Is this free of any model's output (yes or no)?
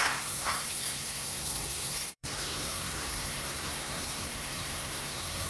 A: no